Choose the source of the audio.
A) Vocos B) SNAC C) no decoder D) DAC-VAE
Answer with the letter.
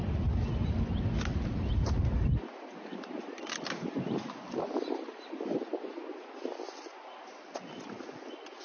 C